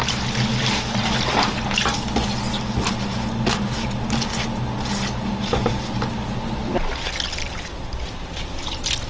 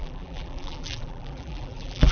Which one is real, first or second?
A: first